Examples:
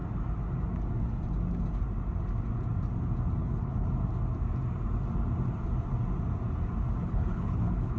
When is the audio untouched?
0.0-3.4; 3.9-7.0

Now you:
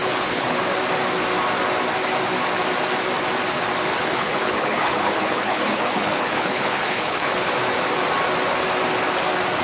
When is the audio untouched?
0.6-3.9; 7.5-9.6